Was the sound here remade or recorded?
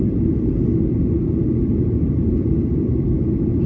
recorded